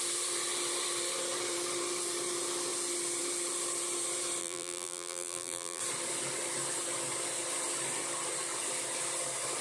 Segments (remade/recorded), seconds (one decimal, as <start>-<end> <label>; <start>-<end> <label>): 0.0-4.4 recorded; 4.4-5.8 remade; 5.8-9.6 recorded